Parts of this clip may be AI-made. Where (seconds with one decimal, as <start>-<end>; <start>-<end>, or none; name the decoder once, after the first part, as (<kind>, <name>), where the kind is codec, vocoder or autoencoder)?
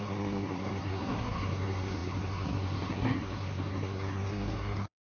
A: 0.0-5.0 (codec, SNAC)